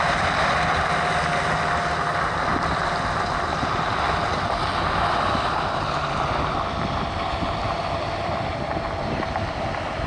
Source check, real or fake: real